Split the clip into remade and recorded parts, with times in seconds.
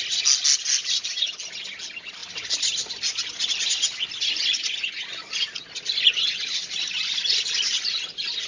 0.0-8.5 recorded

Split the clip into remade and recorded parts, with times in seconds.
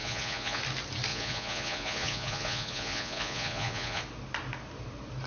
0.0-0.6 remade; 0.6-1.1 recorded; 1.1-4.0 remade; 4.0-5.3 recorded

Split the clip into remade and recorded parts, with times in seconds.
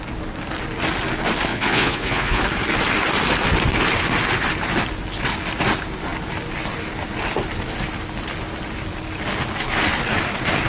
0.0-1.5 recorded; 1.5-2.4 remade; 2.4-10.7 recorded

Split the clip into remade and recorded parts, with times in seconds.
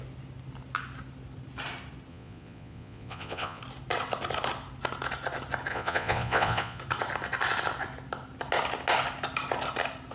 0.0-2.1 recorded; 2.1-3.6 remade; 3.6-5.7 recorded; 5.7-6.8 remade; 6.8-10.1 recorded